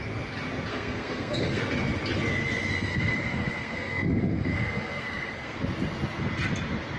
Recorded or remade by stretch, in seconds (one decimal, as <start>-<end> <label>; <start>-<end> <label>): 0.0-0.7 recorded; 0.7-1.6 remade; 1.6-2.9 recorded; 2.9-5.6 remade; 5.6-7.0 recorded

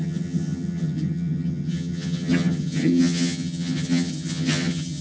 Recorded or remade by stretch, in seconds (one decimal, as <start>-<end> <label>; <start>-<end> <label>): 0.0-5.0 remade

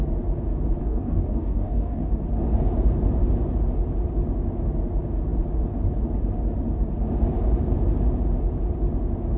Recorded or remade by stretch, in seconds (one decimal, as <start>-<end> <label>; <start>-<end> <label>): 0.0-0.8 recorded; 0.8-2.1 remade; 2.1-9.4 recorded

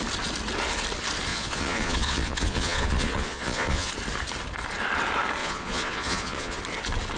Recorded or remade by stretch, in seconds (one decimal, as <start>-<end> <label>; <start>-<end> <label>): 0.0-1.3 recorded; 1.3-3.9 remade; 3.9-5.4 recorded; 5.4-6.6 remade; 6.6-7.2 recorded

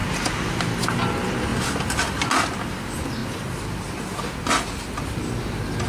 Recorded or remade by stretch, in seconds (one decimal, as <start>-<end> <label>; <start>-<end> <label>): 0.0-5.9 recorded

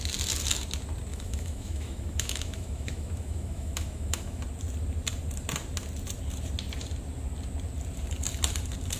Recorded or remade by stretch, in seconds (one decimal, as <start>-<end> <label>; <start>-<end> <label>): 0.0-1.1 recorded; 1.1-4.4 remade; 4.4-9.0 recorded